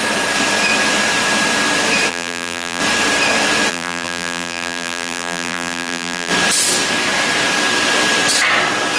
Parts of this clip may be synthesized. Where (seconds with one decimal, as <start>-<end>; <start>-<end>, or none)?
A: 2.1-2.8; 3.7-6.3